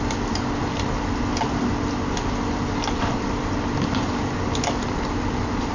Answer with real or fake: real